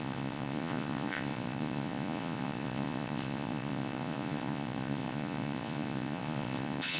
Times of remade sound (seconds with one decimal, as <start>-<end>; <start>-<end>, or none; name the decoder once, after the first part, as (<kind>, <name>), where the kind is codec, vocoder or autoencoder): 0.0-7.0 (vocoder, Vocos)